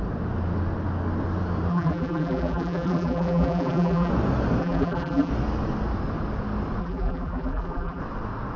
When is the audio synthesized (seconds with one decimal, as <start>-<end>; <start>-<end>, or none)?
1.7-4.1; 4.6-5.3; 6.8-8.0